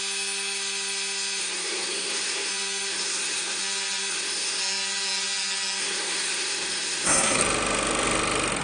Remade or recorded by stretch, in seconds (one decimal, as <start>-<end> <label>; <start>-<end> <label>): 0.0-1.4 recorded; 1.4-2.5 remade; 2.5-2.9 recorded; 2.9-3.6 remade; 3.6-4.1 recorded; 4.1-4.6 remade; 4.6-5.8 recorded; 5.8-7.4 remade; 7.4-8.6 recorded